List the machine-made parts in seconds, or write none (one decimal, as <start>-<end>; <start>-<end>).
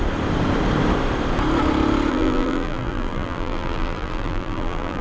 2.1-5.0